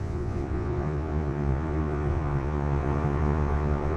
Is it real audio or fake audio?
fake